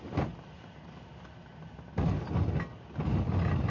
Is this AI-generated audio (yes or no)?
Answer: no